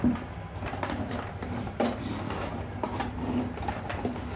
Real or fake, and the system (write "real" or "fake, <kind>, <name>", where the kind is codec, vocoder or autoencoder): fake, vocoder, BigVGAN v2